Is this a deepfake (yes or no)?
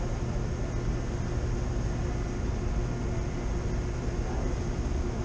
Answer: no